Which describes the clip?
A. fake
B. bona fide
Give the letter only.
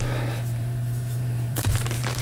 A